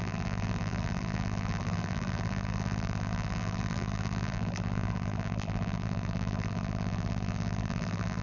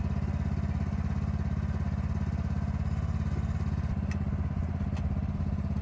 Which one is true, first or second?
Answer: second